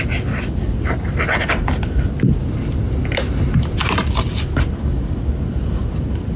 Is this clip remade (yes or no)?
no